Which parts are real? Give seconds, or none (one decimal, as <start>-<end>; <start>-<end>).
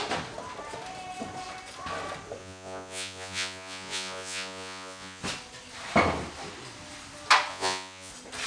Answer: 0.0-2.4; 5.2-7.5; 8.1-8.5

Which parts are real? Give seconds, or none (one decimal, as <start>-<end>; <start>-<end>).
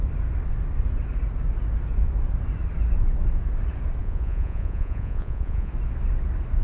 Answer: 0.0-4.0; 5.7-6.6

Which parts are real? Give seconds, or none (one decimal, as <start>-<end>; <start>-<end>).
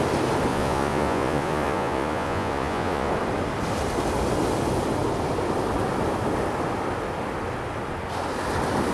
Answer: 0.0-0.5; 3.1-8.9